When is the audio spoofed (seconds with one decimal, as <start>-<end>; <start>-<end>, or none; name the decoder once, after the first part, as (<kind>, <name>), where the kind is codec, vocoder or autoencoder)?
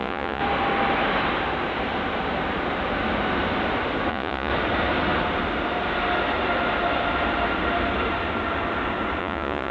0.0-0.4 (vocoder, Vocos); 4.1-4.5; 9.2-9.7